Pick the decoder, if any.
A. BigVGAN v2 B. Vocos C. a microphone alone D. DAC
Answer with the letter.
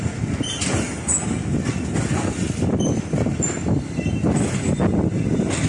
C